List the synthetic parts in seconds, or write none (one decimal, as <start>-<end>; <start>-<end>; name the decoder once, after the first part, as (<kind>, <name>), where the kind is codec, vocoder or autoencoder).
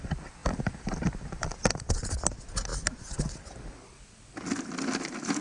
0.4-2.1 (vocoder, BigVGAN v2)